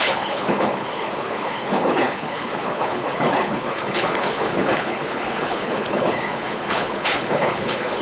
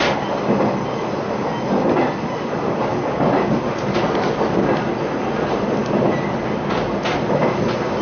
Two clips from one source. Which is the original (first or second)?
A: second